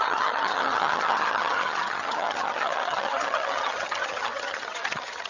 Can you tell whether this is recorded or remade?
remade